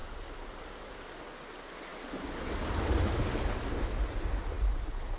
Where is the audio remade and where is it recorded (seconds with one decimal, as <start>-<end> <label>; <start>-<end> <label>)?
0.0-5.2 recorded